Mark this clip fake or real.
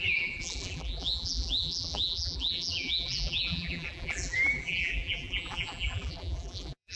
fake